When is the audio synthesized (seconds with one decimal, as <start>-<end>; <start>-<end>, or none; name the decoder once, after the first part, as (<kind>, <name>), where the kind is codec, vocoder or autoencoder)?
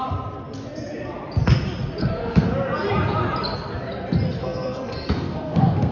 2.0-2.5 (codec, SNAC); 4.4-5.9